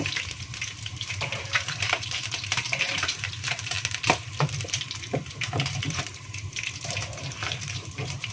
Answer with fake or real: fake